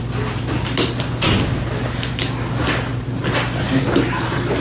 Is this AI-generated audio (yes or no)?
no